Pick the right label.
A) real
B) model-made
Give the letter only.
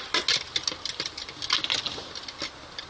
A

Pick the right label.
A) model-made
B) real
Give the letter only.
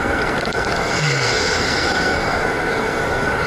A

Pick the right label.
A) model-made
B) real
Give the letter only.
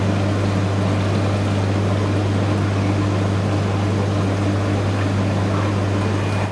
B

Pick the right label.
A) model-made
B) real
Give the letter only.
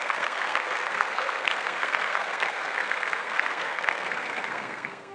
A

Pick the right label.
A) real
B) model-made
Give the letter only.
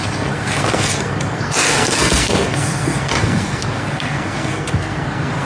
B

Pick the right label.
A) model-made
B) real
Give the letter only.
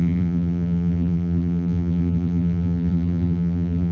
A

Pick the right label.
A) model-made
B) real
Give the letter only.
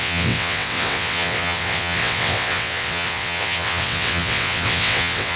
A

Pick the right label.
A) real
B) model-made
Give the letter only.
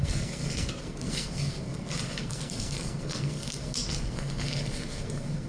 B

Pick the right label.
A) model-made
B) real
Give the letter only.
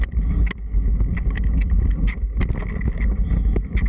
B